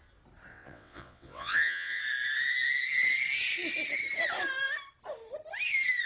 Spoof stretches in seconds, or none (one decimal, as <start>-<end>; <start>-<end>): 0.5-2.0